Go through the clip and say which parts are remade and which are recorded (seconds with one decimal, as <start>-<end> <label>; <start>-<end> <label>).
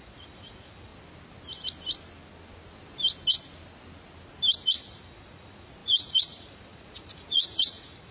0.0-0.9 remade; 0.9-4.6 recorded; 4.6-8.1 remade